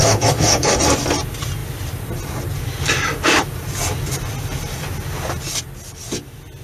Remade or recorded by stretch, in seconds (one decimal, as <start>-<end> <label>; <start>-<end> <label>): 0.0-0.8 remade; 0.8-6.6 recorded